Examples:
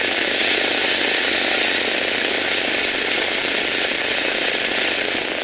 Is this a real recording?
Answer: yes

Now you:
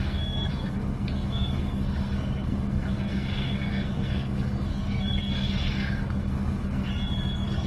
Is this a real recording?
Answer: no